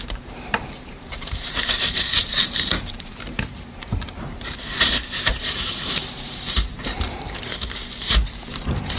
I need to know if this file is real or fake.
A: fake